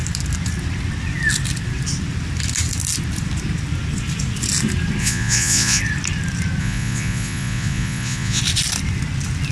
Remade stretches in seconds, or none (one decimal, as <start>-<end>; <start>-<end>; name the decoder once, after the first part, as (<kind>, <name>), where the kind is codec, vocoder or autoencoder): 5.0-5.8 (vocoder, Vocos); 6.6-8.4